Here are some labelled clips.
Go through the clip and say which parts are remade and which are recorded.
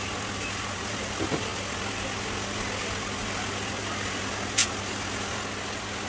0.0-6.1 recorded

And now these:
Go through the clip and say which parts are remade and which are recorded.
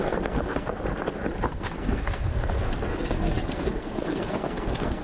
0.0-0.7 remade; 0.7-1.5 recorded; 1.5-5.0 remade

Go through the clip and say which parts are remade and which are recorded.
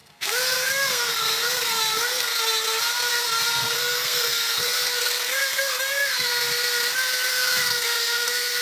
0.0-2.3 remade; 2.3-3.1 recorded; 3.1-6.3 remade; 6.3-7.3 recorded; 7.3-8.6 remade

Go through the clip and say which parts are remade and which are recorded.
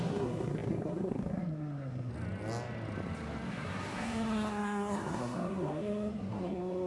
0.0-2.1 remade; 2.1-3.5 recorded; 3.5-6.9 remade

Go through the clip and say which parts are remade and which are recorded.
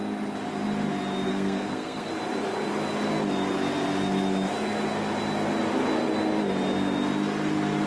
0.0-1.3 recorded; 1.3-2.1 remade; 2.1-7.9 recorded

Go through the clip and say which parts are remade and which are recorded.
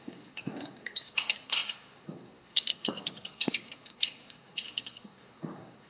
0.0-5.9 remade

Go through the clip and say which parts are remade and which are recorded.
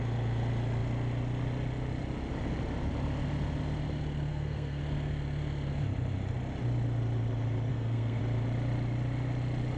0.0-4.3 recorded; 4.3-4.8 remade; 4.8-7.7 recorded; 7.7-8.2 remade; 8.2-9.8 recorded